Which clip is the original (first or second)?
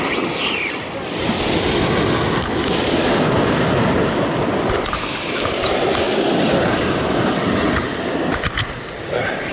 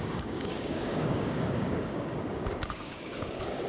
first